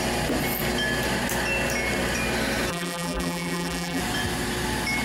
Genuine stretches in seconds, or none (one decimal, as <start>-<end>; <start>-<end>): 0.0-2.7; 4.0-5.0

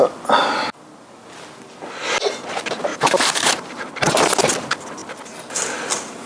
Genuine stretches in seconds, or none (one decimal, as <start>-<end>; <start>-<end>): 0.0-2.9; 3.9-6.3

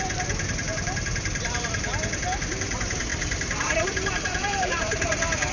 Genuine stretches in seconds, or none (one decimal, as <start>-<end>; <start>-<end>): none

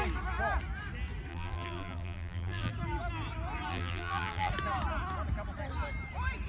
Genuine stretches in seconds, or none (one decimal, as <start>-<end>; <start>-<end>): 0.0-1.3; 2.7-3.7; 4.5-6.5

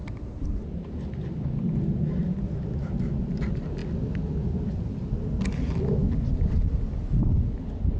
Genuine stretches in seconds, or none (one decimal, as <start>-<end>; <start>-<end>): 1.1-8.0

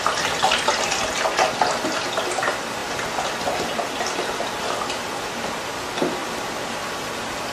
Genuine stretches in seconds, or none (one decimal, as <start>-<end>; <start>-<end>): 0.0-7.5

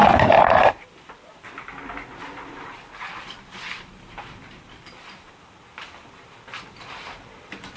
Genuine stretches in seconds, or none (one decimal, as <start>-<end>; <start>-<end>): 0.0-2.6